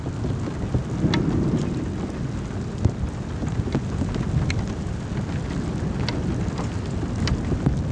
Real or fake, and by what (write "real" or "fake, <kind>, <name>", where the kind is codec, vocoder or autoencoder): real